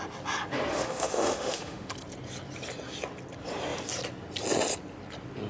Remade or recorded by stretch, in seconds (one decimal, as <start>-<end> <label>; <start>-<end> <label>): 0.0-0.7 recorded; 0.7-1.9 remade; 1.9-5.5 recorded